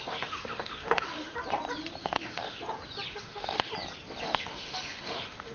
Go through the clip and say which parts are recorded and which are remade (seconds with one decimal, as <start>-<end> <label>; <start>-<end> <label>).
0.0-1.3 remade; 1.3-2.0 recorded; 2.0-2.6 remade; 2.6-3.1 recorded; 3.1-3.7 remade; 3.7-4.2 recorded; 4.2-5.5 remade